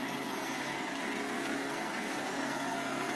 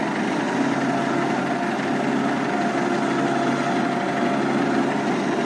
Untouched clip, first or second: second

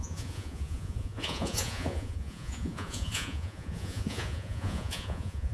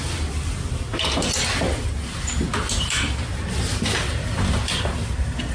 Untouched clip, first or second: second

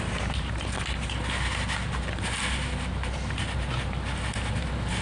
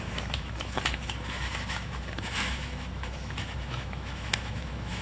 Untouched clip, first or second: first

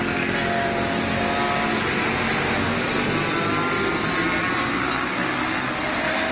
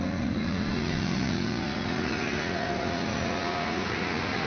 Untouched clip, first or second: first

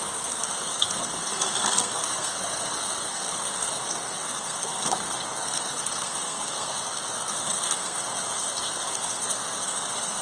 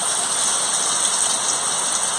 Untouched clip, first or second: second